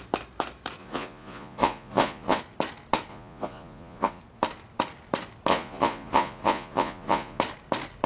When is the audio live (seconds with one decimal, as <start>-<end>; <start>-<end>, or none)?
0.0-0.8; 2.4-3.1; 4.2-5.5; 7.4-8.1